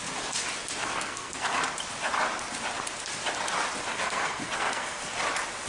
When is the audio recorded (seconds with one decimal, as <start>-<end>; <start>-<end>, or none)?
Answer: 0.0-0.8; 1.6-3.9; 5.2-5.7